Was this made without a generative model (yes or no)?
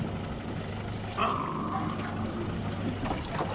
yes